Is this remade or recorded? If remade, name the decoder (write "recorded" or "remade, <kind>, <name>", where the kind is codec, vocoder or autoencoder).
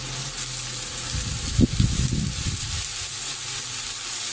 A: recorded